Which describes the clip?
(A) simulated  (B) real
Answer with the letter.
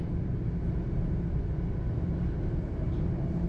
B